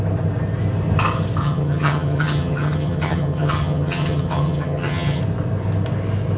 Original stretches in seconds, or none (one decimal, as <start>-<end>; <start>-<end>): 0.0-1.4; 5.2-6.4